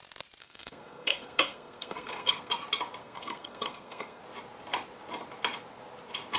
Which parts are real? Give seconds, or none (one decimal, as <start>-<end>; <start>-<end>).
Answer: 0.0-0.4; 2.5-3.0; 4.2-6.4